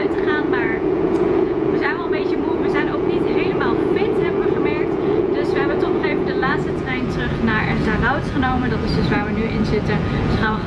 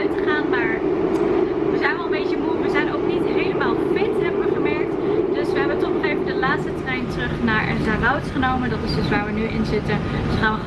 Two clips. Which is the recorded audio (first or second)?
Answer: second